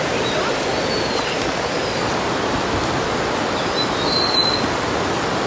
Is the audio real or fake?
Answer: real